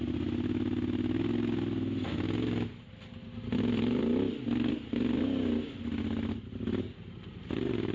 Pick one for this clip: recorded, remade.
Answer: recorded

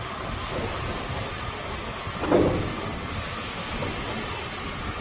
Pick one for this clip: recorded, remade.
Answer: recorded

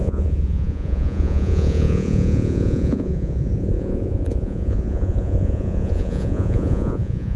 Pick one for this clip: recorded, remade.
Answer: remade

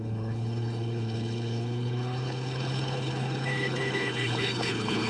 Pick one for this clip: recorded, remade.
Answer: remade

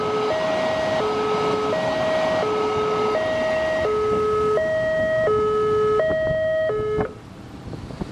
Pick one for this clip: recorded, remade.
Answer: recorded